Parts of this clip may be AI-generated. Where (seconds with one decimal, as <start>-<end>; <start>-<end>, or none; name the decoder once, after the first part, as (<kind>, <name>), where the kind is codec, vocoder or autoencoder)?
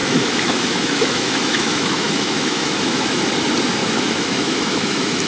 0.0-3.2 (autoencoder, DAC-VAE); 3.8-5.3